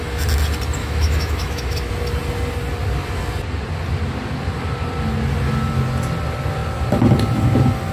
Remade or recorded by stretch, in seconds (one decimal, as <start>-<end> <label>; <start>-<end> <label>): 0.0-0.8 recorded; 0.8-1.9 remade; 1.9-7.9 recorded